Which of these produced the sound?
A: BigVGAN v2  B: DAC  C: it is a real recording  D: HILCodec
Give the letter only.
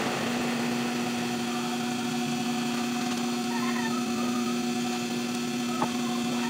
C